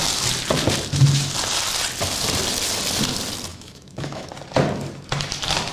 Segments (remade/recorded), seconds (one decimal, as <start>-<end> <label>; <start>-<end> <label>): 0.0-3.5 recorded; 3.5-4.3 remade; 4.3-5.7 recorded